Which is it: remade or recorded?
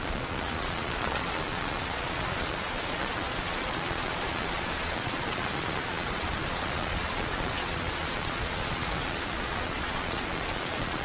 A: remade